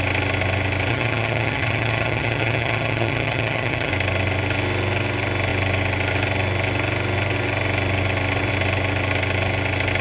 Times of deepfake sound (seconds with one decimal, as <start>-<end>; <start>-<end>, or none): 0.9-3.9